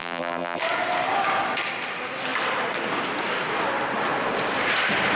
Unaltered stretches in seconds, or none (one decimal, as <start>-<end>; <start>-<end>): 0.6-5.2